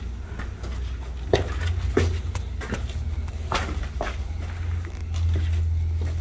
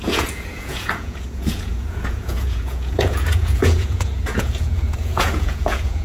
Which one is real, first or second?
first